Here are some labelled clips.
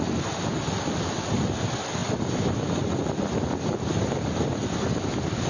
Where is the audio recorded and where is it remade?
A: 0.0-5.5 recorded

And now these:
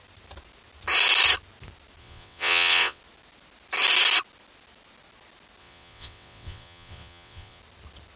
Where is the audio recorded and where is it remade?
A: 0.0-2.0 recorded; 2.0-3.0 remade; 3.0-5.6 recorded; 5.6-7.6 remade; 7.6-8.2 recorded

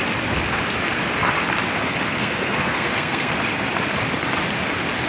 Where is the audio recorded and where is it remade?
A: 0.0-2.2 recorded; 2.2-3.3 remade; 3.3-5.1 recorded